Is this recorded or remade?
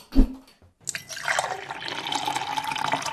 recorded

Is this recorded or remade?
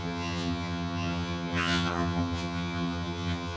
remade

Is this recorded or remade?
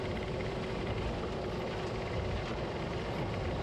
recorded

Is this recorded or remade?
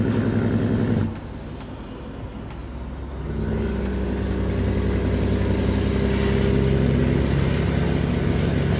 recorded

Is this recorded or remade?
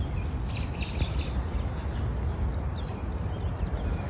recorded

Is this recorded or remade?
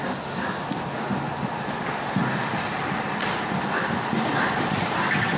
recorded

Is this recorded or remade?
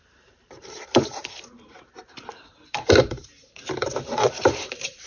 remade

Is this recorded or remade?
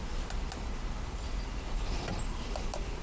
recorded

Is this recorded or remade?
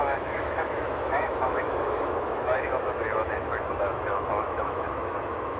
remade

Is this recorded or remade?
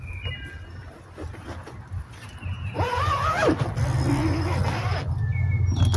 recorded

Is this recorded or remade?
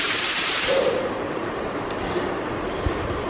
remade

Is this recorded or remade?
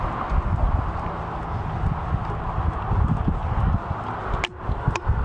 recorded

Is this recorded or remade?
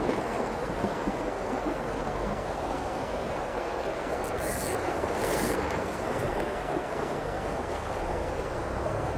remade